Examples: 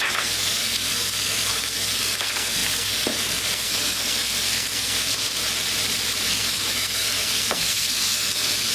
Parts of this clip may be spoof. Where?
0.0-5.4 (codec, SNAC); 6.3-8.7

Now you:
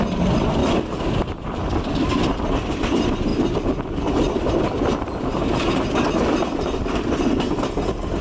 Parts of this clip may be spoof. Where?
none

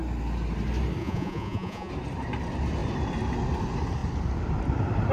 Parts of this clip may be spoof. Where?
1.0-1.9 (vocoder, Vocos)

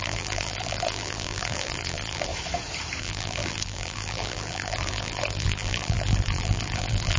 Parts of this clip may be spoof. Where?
0.0-2.3 (vocoder, BigVGAN v2); 3.0-7.2

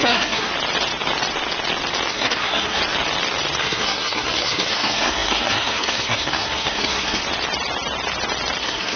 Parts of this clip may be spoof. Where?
0.0-0.5 (codec, SNAC); 2.1-2.8; 3.6-7.2; 8.6-9.0

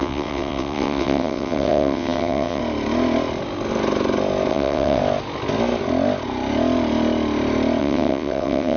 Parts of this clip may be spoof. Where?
0.0-2.6 (vocoder, WaveNeXt); 4.5-5.0; 7.8-8.8

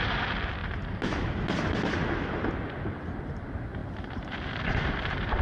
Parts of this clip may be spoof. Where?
3.8-5.4 (vocoder, BigVGAN v2)